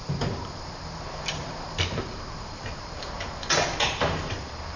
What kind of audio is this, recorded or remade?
remade